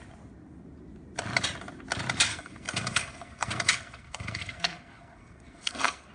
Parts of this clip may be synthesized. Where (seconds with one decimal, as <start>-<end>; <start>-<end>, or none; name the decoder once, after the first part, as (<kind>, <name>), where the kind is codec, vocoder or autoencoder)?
2.3-6.1 (codec, SNAC)